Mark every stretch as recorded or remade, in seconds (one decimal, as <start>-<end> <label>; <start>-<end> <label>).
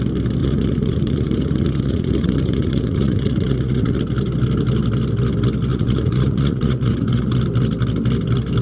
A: 0.0-0.4 recorded; 0.4-4.0 remade; 4.0-5.7 recorded; 5.7-7.3 remade; 7.3-8.6 recorded